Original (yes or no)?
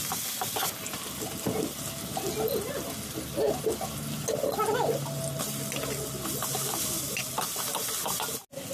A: yes